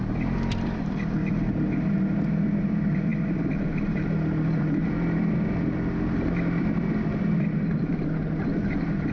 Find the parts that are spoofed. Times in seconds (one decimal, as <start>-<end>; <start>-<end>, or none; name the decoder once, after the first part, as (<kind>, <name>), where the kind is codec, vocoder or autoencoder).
none

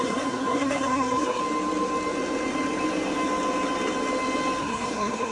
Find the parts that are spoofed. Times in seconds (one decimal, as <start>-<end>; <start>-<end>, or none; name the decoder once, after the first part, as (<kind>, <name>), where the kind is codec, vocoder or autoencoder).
0.0-1.4 (codec, SNAC); 4.6-5.3

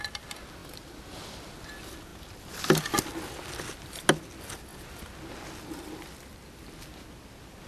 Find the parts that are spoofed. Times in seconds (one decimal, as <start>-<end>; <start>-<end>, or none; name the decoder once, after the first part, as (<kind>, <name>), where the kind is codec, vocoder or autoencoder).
0.6-1.1 (vocoder, BigVGAN v2)